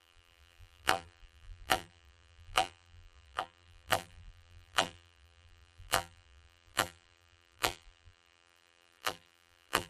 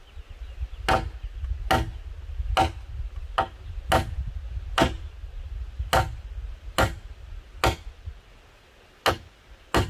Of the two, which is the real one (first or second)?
second